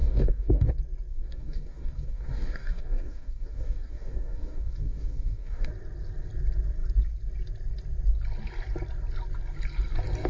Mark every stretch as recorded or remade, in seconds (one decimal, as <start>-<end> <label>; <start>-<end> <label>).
0.0-0.7 remade; 0.7-1.1 recorded; 1.1-5.7 remade; 5.7-10.3 recorded